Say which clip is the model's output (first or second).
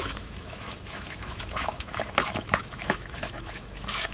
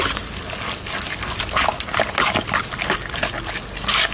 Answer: first